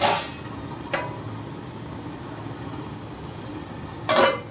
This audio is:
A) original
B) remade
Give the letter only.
A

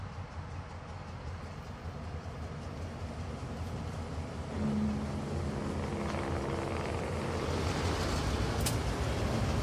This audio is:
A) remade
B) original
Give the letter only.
B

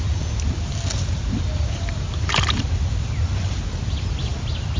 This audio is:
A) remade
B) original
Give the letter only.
B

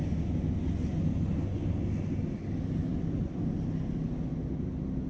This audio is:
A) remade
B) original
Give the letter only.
B